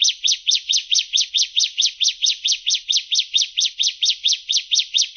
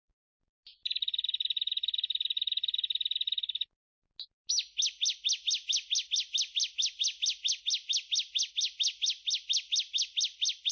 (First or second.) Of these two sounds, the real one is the second